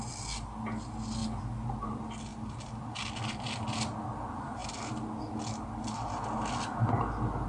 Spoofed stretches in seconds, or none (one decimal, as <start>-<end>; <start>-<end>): none